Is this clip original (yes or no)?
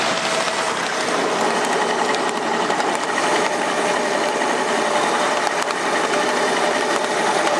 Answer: no